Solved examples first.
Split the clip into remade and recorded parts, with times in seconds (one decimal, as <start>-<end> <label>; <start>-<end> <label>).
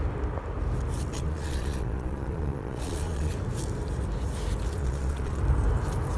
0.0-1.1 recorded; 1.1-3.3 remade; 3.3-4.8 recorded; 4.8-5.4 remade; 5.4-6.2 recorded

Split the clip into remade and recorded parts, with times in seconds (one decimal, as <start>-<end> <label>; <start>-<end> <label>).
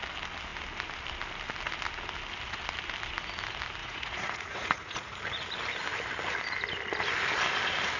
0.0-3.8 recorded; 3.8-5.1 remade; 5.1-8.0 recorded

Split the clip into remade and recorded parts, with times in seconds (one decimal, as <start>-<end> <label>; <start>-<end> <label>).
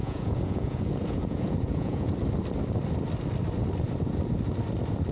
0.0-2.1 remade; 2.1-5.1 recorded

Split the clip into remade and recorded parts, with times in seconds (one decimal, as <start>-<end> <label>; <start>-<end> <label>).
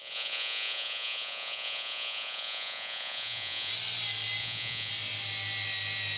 0.0-3.7 remade; 3.7-4.4 recorded; 4.4-4.9 remade; 4.9-6.2 recorded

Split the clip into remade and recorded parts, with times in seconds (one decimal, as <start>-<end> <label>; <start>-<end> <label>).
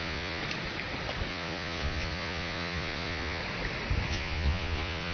0.0-0.4 remade; 0.4-1.3 recorded; 1.3-3.4 remade; 3.4-4.1 recorded; 4.1-5.1 remade